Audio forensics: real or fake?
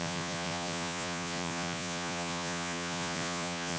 fake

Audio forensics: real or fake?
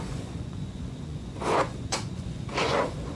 fake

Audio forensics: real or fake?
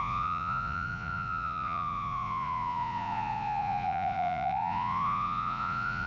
fake